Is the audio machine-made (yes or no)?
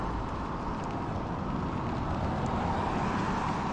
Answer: no